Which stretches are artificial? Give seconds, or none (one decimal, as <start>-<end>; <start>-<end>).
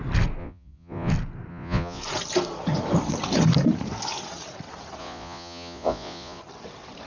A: 0.4-1.1; 1.5-2.0; 5.0-6.4